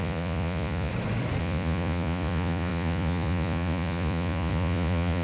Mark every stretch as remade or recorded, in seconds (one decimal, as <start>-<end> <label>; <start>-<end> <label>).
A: 0.0-0.9 remade; 0.9-1.4 recorded; 1.4-5.2 remade